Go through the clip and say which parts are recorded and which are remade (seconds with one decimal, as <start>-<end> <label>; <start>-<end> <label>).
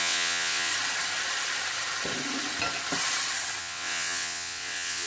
0.0-0.7 remade; 0.7-3.6 recorded; 3.6-5.1 remade